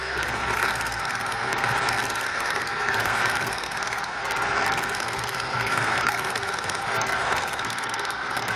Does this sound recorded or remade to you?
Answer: remade